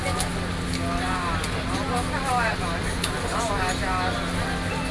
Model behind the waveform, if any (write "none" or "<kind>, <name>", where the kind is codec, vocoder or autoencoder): none